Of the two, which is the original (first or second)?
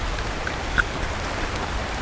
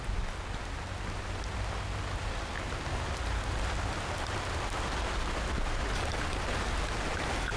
second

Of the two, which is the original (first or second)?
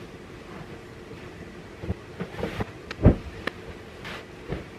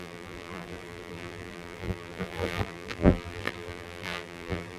first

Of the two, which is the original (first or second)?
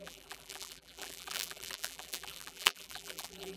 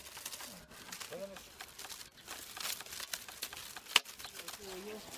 second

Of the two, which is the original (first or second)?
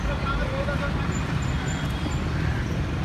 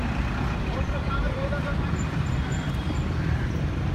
first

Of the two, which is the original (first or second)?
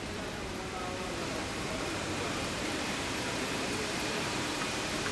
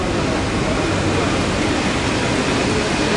second